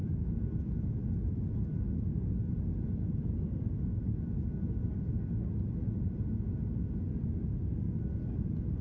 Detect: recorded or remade recorded